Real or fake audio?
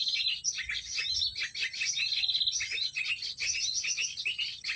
real